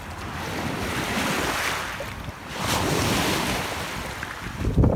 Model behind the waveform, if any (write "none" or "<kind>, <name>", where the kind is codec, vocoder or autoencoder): none